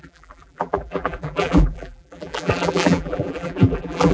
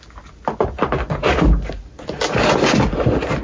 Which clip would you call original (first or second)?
second